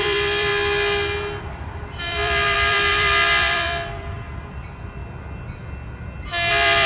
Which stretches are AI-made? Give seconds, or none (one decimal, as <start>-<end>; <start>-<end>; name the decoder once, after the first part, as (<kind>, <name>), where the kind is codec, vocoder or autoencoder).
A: 0.0-0.5 (vocoder, BigVGAN v2); 1.4-5.0; 6.5-6.9